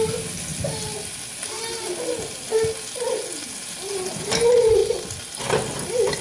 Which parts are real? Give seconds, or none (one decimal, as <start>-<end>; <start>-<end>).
0.0-6.2